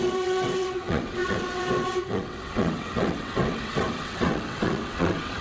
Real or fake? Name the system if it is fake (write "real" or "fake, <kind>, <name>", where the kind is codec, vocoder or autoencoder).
fake, vocoder, WaveNeXt